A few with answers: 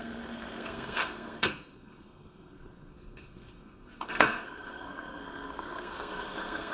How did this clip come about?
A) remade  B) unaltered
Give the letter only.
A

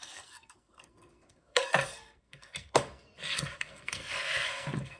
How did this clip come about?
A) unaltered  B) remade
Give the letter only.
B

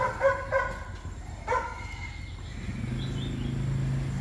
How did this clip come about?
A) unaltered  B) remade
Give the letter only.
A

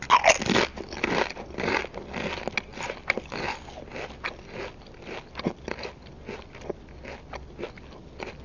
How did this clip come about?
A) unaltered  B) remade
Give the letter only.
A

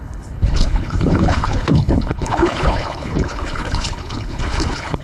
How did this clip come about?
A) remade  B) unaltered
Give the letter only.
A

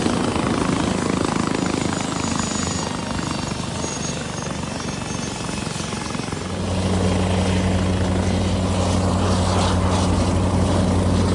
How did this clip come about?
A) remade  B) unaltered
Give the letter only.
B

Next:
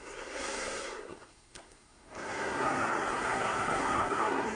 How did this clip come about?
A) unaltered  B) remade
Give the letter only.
B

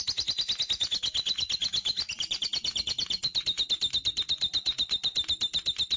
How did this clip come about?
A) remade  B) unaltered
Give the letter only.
B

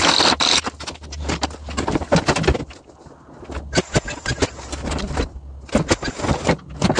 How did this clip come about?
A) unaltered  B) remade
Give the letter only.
A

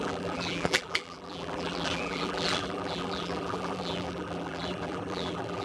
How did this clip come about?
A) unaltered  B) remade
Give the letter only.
B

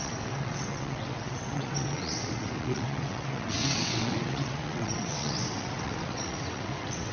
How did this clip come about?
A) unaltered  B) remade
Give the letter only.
B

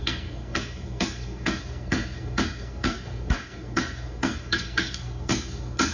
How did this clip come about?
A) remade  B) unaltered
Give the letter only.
A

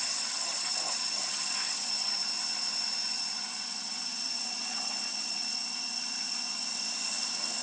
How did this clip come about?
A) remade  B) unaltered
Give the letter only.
A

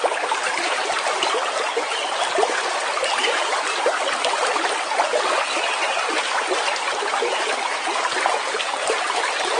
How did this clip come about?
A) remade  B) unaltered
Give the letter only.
B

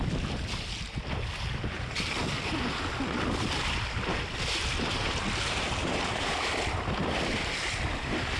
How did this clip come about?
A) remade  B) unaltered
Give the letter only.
B